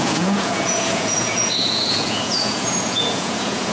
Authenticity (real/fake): fake